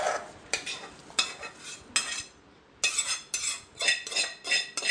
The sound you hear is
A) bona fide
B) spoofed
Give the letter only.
A